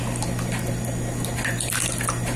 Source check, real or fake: real